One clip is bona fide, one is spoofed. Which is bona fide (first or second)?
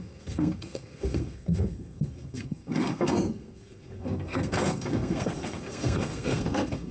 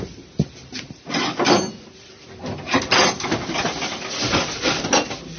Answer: second